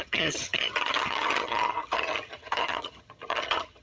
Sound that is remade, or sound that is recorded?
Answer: remade